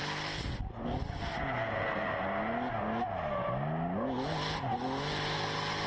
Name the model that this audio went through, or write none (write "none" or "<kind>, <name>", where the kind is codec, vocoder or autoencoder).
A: none